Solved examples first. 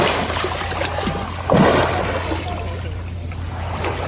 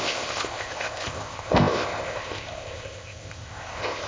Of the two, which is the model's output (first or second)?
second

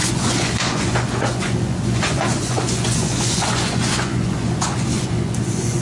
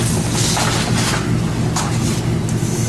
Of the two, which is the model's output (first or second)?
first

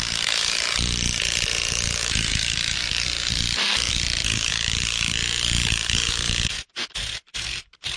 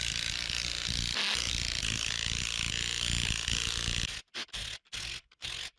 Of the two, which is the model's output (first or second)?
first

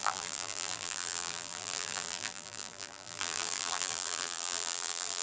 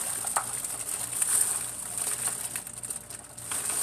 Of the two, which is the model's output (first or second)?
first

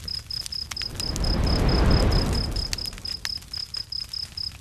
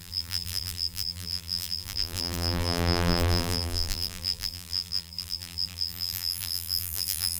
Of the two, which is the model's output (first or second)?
second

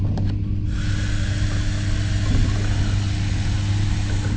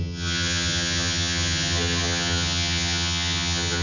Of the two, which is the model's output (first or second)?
second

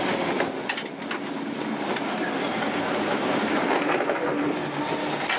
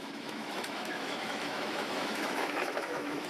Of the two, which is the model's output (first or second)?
second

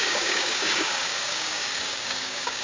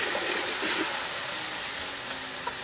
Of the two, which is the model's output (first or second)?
first